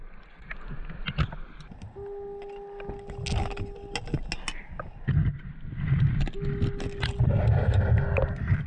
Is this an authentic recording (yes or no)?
yes